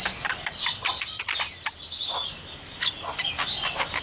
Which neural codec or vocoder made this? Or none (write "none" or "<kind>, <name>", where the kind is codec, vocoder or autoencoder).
none